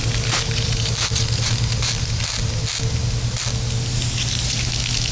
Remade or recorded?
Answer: recorded